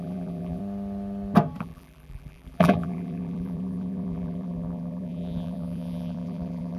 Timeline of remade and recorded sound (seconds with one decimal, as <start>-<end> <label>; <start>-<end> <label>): 0.0-0.6 remade; 0.6-1.6 recorded; 1.6-6.8 remade

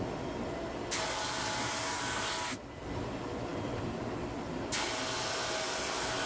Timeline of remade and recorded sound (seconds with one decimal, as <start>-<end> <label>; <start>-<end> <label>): 0.0-6.3 recorded

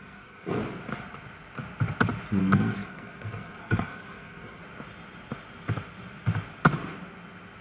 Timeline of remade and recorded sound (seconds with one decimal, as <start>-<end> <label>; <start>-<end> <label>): 0.0-0.6 remade; 0.6-2.4 recorded; 2.4-4.6 remade; 4.6-7.6 recorded